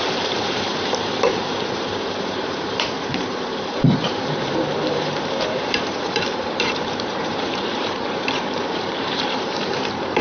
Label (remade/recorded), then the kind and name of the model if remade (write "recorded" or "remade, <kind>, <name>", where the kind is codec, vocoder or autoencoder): remade, vocoder, BigVGAN v2